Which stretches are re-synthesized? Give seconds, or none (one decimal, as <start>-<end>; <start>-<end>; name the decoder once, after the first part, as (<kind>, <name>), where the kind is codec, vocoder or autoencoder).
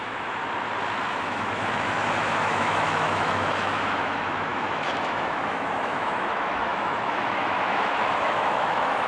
0.0-0.4 (autoencoder, DAC-VAE); 1.2-9.1